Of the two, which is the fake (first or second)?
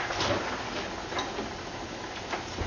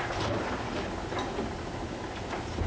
second